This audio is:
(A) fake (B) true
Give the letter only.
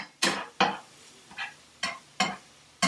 B